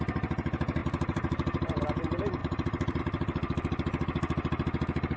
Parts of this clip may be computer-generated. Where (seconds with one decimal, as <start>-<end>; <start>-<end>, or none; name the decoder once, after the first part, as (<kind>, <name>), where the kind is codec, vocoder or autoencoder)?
0.8-1.8 (vocoder, BigVGAN v2); 2.4-3.0